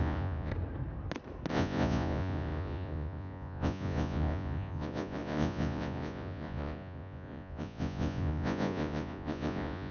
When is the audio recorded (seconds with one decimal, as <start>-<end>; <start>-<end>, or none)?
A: 0.5-1.5